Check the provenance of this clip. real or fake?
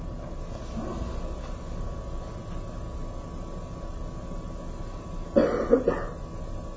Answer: real